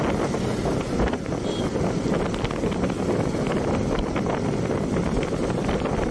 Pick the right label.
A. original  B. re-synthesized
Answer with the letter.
A